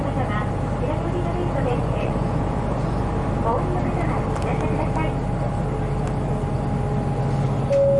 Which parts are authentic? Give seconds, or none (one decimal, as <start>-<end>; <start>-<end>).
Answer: 0.0-1.7; 3.0-8.0